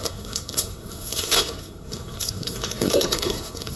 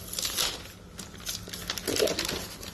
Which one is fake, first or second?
first